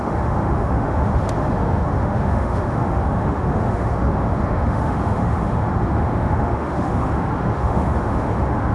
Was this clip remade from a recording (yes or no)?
yes